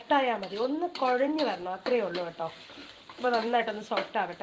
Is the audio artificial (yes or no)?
yes